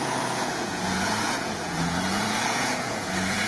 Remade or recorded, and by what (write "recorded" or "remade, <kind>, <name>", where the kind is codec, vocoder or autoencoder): remade, vocoder, Vocos